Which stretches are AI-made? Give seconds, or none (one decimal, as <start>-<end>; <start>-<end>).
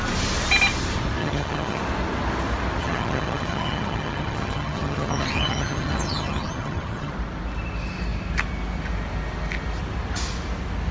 1.2-1.8; 2.8-7.1